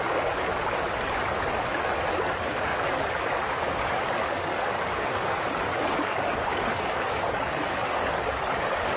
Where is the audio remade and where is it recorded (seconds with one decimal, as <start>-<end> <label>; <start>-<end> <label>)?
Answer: 0.0-0.6 remade; 0.6-1.8 recorded; 1.8-9.0 remade